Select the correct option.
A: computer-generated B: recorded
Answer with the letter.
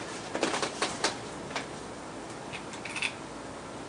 B